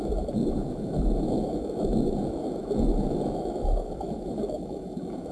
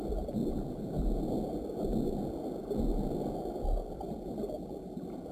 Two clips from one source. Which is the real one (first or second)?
second